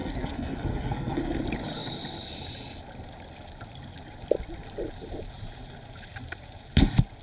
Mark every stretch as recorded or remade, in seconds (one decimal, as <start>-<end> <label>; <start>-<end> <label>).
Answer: 0.0-1.4 remade; 1.4-7.2 recorded